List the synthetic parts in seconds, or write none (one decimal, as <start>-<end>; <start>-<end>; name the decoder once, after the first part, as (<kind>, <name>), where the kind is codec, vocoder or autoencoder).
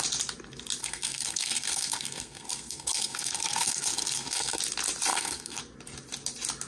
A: 0.8-4.6 (codec, SNAC); 5.1-5.6